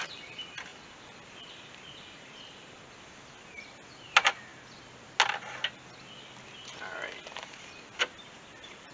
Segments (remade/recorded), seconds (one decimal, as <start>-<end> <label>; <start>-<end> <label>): 0.0-8.9 recorded